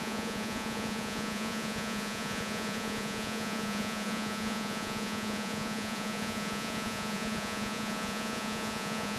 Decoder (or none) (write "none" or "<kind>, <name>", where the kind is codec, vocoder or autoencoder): vocoder, Vocos